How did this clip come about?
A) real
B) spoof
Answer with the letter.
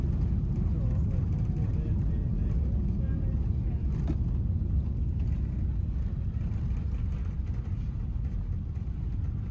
A